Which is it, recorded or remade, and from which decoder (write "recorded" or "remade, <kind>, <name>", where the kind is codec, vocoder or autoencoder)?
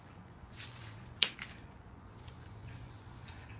remade, vocoder, Vocos